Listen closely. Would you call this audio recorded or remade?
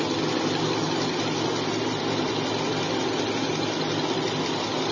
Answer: recorded